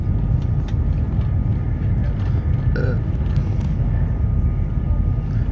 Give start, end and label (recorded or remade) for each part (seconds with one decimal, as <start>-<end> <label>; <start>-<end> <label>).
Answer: 0.0-5.5 recorded